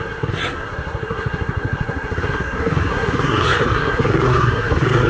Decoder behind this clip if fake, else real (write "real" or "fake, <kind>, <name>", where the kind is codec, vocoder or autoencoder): fake, codec, SNAC